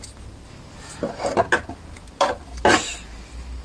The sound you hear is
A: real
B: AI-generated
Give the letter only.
A